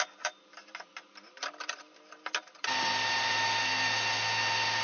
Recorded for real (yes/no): yes